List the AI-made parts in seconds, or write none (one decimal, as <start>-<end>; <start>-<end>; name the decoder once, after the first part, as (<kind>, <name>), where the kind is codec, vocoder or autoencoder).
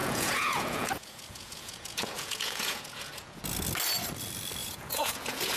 0.0-3.4 (vocoder, Vocos); 4.6-5.6